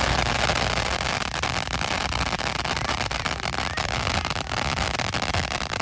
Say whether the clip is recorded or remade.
remade